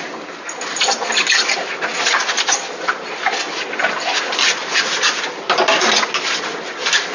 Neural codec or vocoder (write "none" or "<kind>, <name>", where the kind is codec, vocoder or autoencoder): none